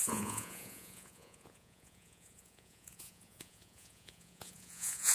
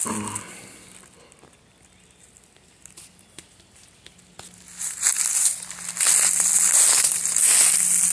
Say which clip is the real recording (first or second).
second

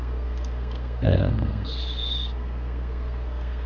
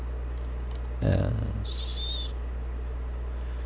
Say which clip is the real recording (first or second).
second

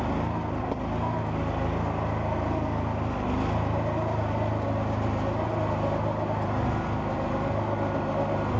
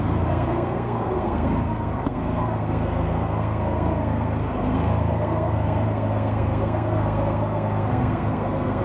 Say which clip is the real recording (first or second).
first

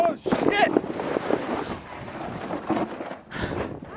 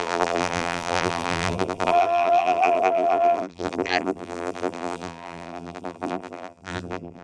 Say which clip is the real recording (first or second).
first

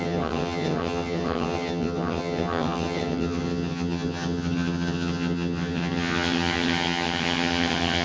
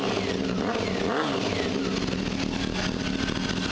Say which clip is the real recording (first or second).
second